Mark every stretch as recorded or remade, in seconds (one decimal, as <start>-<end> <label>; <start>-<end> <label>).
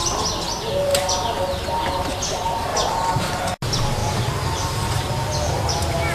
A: 0.0-6.1 recorded